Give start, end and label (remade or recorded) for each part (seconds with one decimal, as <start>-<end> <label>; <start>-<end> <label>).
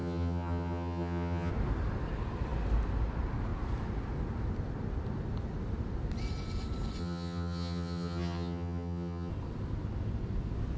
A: 0.0-1.5 remade; 1.5-7.0 recorded; 7.0-9.3 remade; 9.3-10.8 recorded